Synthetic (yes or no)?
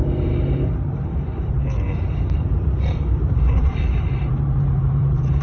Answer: yes